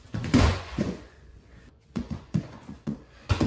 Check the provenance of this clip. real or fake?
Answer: fake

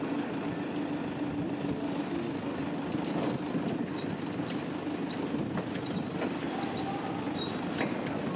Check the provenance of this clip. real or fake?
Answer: real